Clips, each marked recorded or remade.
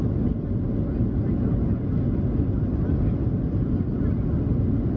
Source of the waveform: recorded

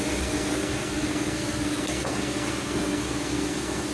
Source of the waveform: remade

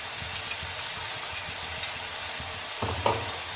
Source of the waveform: recorded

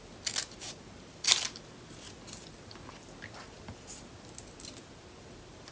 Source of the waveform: recorded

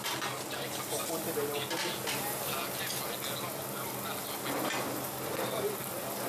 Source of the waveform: recorded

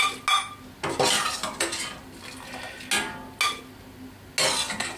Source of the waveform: recorded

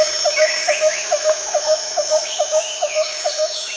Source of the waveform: remade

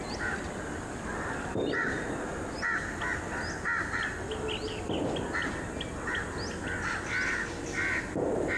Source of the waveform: recorded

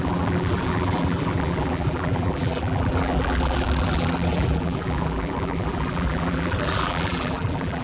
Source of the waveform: remade